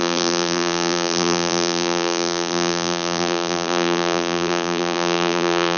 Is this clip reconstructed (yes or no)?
yes